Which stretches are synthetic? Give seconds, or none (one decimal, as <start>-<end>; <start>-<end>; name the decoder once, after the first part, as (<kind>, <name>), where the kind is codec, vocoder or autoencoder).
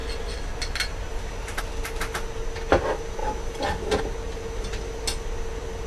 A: none